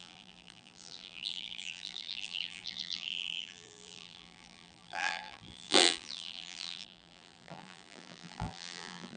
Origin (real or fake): fake